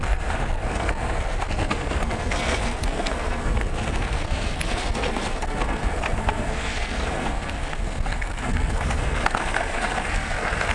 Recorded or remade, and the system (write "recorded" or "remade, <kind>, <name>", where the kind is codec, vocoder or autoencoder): remade, codec, SNAC